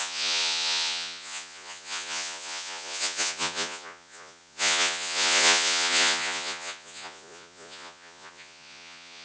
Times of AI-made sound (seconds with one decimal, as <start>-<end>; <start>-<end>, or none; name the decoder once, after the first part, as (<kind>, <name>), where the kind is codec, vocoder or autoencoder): 0.0-9.2 (vocoder, Vocos)